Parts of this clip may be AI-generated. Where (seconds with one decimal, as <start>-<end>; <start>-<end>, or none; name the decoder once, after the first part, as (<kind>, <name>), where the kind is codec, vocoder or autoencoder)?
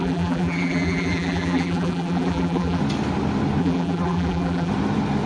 0.0-2.8 (vocoder, BigVGAN v2); 3.6-4.7